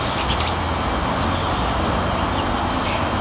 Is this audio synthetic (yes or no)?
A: no